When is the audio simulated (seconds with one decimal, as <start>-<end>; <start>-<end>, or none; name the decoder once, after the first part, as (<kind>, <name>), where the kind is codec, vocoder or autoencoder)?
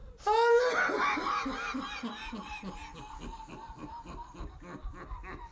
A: none